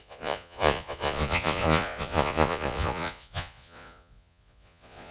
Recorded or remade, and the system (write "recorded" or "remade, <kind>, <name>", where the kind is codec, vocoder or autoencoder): remade, vocoder, Vocos